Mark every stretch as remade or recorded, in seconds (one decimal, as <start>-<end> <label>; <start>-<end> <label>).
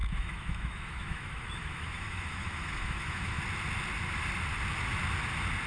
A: 0.0-3.4 remade; 3.4-5.7 recorded